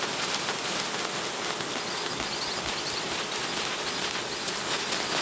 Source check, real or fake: real